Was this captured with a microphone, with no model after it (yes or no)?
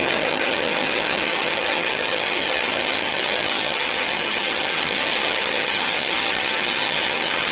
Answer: no